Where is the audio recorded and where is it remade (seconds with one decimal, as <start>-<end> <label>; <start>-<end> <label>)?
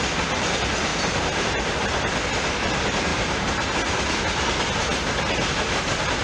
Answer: 0.0-0.9 recorded; 0.9-1.7 remade; 1.7-3.1 recorded; 3.1-3.7 remade; 3.7-6.2 recorded